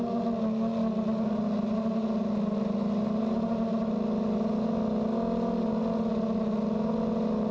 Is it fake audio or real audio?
real